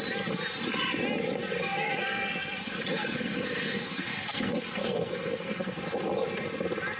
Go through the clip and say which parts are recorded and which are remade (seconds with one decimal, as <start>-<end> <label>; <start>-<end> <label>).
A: 0.0-1.6 recorded; 1.6-5.8 remade; 5.8-7.0 recorded